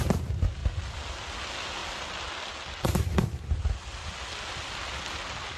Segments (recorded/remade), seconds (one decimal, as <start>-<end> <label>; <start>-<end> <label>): 0.0-5.6 recorded